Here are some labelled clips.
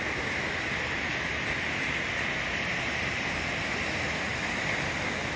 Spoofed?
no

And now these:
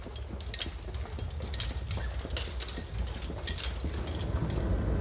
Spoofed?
no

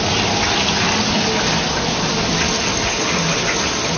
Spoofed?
no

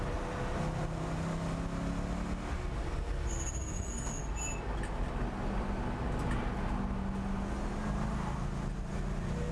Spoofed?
no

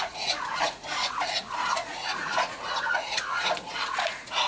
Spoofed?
yes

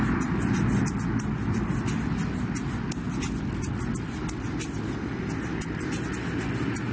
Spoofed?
no